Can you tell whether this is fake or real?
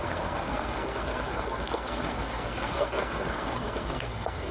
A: fake